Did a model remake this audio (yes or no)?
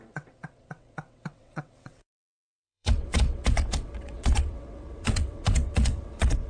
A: yes